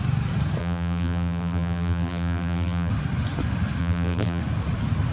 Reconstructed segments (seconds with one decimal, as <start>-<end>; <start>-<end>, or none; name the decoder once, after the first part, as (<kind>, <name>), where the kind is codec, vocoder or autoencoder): 0.6-2.9 (vocoder, BigVGAN v2); 3.8-4.4